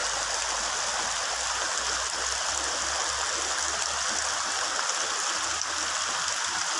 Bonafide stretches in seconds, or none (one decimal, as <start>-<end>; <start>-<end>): 0.0-6.8